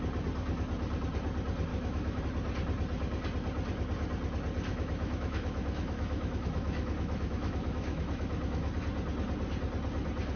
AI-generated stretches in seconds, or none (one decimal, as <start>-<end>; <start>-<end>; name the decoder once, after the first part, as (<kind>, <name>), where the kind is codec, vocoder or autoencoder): 1.7-2.2 (autoencoder, DAC-VAE); 4.7-8.8